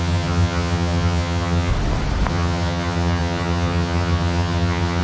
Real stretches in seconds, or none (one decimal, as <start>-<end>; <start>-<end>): 1.7-2.3

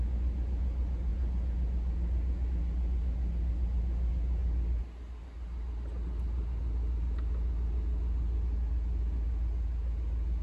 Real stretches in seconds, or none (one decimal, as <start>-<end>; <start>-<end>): 0.0-10.4

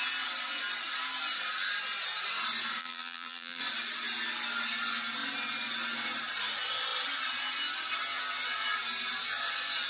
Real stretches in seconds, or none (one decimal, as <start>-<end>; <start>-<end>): 0.0-2.8; 3.6-9.9

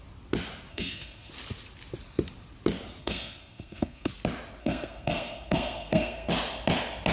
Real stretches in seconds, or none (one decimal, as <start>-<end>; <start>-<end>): 0.0-0.7; 1.3-3.0; 4.1-4.6; 6.3-7.1

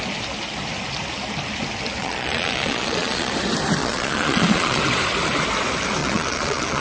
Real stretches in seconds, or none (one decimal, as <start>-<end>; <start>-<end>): 0.0-2.0; 3.3-3.8; 4.8-6.0

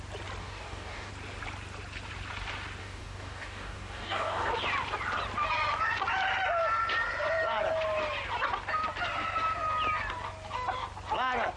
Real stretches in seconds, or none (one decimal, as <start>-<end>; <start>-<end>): 0.0-0.4; 1.1-2.8; 4.5-11.6